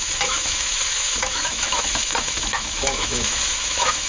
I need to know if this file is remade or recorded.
remade